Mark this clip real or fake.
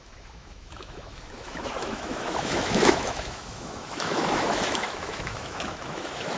fake